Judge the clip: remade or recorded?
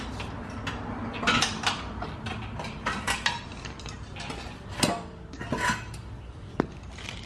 recorded